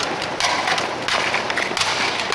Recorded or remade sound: recorded